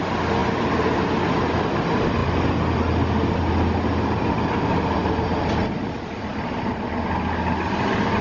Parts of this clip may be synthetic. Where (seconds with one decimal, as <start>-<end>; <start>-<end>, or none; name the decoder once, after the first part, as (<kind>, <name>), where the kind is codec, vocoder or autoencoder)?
none